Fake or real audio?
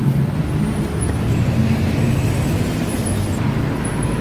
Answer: real